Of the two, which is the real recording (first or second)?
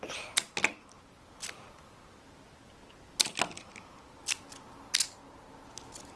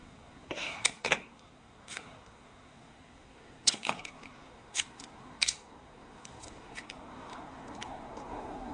first